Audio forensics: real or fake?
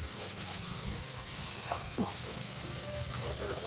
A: fake